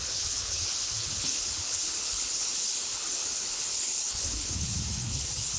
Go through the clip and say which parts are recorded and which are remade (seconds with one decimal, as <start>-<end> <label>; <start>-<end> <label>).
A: 0.0-5.6 remade